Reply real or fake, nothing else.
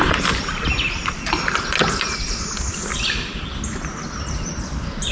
real